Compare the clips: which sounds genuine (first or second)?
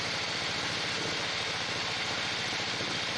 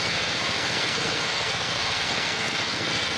first